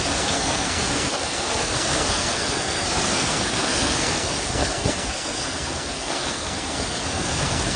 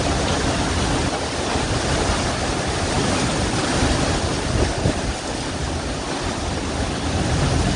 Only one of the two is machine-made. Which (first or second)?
first